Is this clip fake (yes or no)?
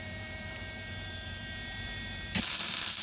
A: yes